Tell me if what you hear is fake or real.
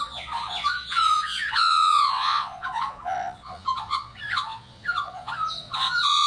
fake